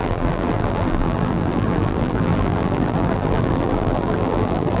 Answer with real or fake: fake